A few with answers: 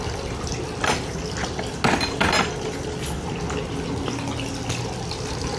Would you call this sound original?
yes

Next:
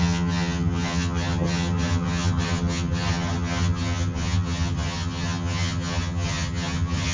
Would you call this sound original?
no